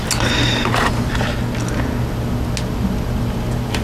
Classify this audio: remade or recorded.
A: recorded